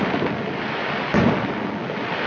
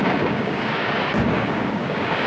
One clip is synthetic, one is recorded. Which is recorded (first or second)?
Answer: first